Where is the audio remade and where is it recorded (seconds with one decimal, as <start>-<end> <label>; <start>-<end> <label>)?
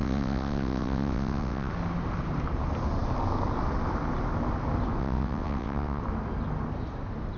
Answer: 0.0-1.7 remade; 1.7-5.0 recorded; 5.0-6.0 remade; 6.0-7.4 recorded